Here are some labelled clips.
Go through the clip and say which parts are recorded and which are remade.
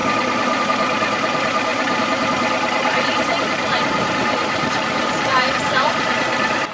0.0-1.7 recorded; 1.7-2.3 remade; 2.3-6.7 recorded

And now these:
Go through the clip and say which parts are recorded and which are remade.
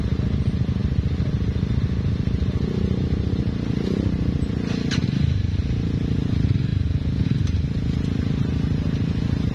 0.0-9.5 recorded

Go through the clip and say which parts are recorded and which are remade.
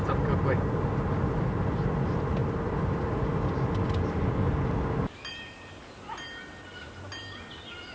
0.0-7.9 recorded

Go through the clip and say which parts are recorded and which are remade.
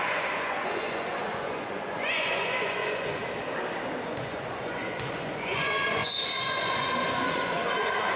0.0-3.2 remade; 3.2-4.0 recorded; 4.0-8.2 remade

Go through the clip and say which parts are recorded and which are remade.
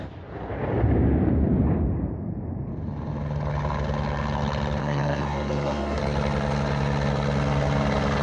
0.0-4.8 recorded; 4.8-6.0 remade; 6.0-8.2 recorded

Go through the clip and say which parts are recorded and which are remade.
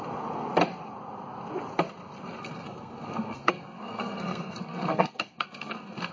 0.0-2.4 recorded; 2.4-6.1 remade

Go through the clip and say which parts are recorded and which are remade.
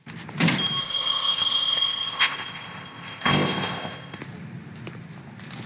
0.0-0.8 recorded; 0.8-4.2 remade; 4.2-5.7 recorded